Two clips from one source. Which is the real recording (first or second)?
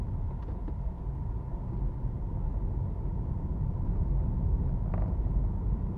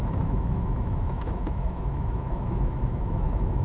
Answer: first